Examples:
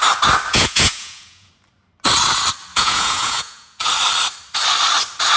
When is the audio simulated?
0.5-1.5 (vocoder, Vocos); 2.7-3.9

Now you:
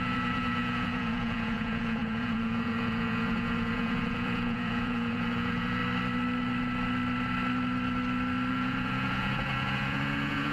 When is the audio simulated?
0.0-5.8 (vocoder, Vocos); 8.5-10.5